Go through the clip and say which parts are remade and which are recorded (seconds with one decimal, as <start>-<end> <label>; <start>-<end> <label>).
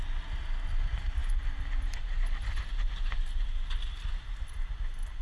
0.0-5.2 recorded